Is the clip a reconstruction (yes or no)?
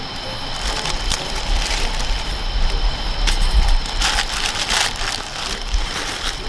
no